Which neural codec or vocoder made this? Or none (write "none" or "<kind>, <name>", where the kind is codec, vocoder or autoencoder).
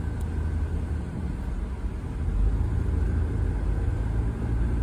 none